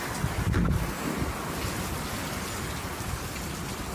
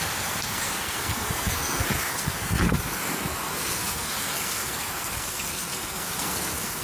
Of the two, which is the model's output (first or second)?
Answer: second